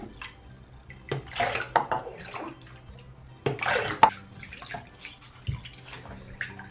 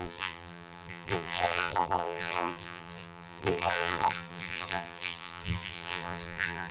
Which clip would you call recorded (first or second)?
first